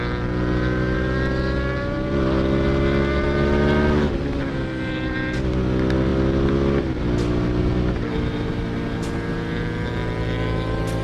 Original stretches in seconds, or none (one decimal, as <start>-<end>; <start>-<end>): 0.0-11.0